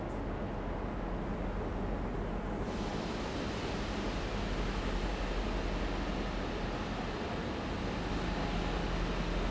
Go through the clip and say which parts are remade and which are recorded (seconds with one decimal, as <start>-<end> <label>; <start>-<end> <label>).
0.0-9.5 recorded